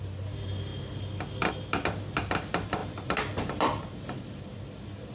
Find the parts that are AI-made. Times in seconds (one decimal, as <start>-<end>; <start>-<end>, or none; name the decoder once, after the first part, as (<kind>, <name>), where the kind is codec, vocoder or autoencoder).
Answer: none